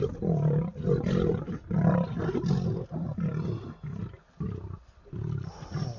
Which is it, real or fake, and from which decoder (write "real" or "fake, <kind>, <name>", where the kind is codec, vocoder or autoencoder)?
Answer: real